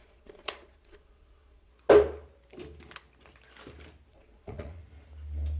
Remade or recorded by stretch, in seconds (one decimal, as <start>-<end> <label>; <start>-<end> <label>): 0.0-1.7 remade; 1.7-4.1 recorded; 4.1-4.8 remade; 4.8-5.6 recorded